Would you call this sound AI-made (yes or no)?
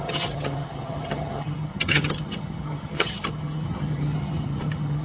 yes